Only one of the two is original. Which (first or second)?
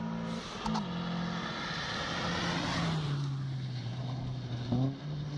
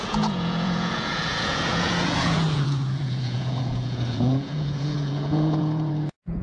first